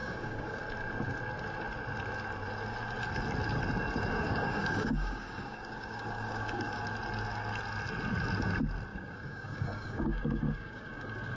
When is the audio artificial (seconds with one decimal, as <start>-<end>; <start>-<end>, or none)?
0.0-0.6; 4.1-6.8; 8.9-11.4